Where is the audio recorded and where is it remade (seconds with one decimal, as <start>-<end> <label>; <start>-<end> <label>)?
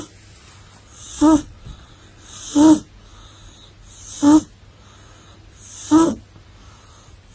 0.0-0.9 recorded; 0.9-1.9 remade; 1.9-7.3 recorded